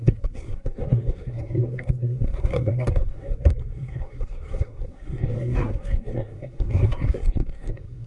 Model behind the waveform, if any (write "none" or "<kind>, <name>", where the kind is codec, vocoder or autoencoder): codec, SNAC